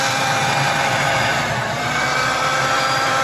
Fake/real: fake